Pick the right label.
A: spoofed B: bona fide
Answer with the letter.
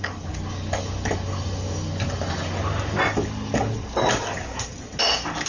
B